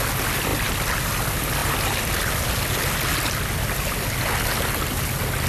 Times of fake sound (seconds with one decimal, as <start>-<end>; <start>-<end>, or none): none